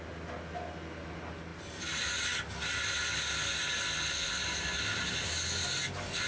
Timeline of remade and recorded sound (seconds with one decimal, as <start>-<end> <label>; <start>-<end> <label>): 0.0-6.3 recorded